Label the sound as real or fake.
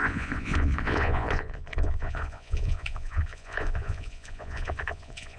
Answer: fake